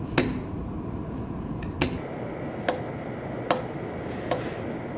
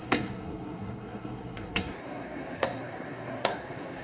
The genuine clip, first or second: first